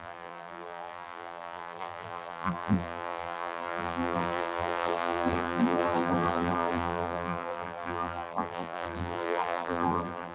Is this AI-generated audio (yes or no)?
yes